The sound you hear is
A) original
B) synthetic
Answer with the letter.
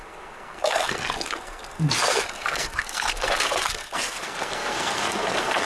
B